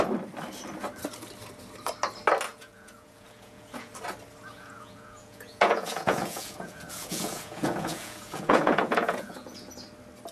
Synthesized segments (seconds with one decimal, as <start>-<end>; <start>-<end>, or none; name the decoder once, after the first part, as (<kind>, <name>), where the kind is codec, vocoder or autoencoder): 2.5-3.9 (vocoder, Vocos); 4.5-9.7